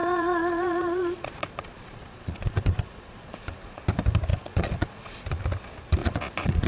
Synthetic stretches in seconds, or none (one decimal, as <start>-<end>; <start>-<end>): 0.0-3.8; 4.3-5.4; 6.0-6.7